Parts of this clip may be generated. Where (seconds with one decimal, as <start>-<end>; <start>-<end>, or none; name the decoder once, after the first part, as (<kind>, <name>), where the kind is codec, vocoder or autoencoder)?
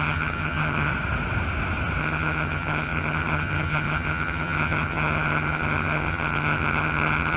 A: 0.0-0.9 (vocoder, HiFi-GAN); 2.0-7.4